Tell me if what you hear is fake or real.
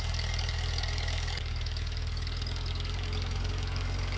fake